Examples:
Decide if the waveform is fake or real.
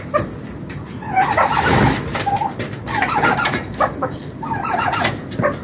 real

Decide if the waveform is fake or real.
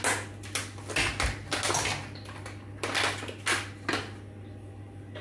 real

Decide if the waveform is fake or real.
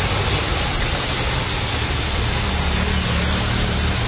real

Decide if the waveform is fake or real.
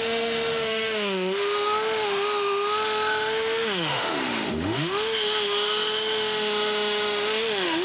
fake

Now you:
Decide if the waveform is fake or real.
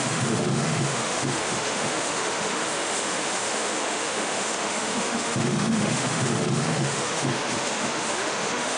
fake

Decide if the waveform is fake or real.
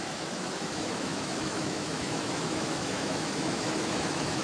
fake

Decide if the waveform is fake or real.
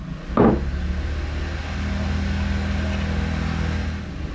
real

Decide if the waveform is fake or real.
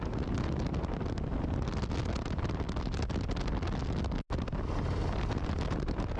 real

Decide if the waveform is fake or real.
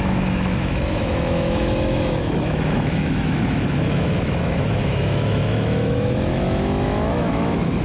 fake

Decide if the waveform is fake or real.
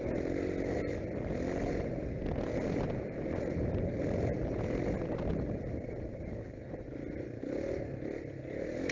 real